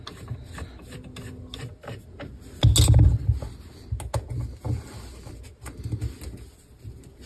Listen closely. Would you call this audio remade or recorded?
recorded